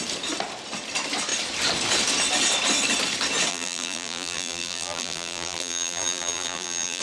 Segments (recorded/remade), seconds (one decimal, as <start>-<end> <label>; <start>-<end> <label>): 0.0-3.5 recorded; 3.5-7.0 remade